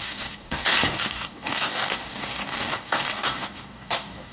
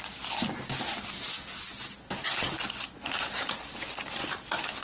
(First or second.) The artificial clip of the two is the first